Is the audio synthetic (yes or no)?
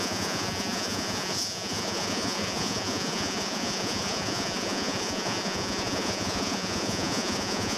yes